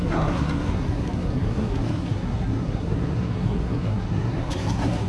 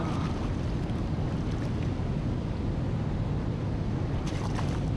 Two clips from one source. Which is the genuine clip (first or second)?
second